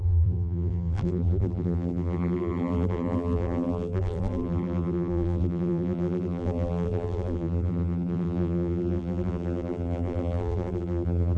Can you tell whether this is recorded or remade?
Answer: remade